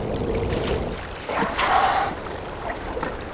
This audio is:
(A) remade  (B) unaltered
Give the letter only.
B